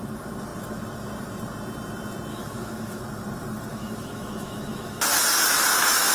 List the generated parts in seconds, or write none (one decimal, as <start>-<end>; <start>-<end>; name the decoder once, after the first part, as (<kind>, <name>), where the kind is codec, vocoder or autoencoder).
2.3-3.0 (autoencoder, DAC-VAE); 3.7-5.0